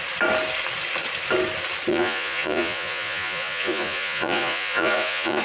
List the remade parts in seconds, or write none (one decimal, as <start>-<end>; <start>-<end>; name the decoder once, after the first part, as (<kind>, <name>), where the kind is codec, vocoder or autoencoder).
1.9-5.4 (vocoder, Vocos)